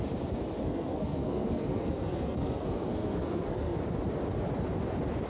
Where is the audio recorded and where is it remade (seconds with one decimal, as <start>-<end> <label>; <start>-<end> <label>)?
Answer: 0.0-0.6 recorded; 0.6-3.8 remade; 3.8-5.3 recorded